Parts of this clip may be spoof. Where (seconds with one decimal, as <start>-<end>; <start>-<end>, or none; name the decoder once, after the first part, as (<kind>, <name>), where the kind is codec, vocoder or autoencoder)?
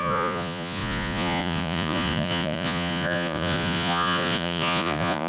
0.0-5.3 (vocoder, Vocos)